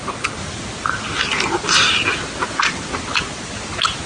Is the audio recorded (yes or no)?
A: yes